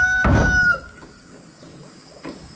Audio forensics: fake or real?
fake